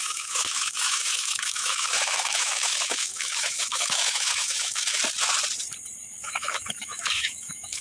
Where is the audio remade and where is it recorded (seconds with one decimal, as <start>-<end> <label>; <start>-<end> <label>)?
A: 0.0-5.0 remade; 5.0-6.2 recorded; 6.2-7.8 remade